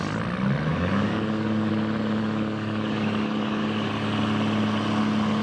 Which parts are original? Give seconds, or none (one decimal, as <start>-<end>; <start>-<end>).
0.0-0.7; 1.7-2.2; 3.9-5.4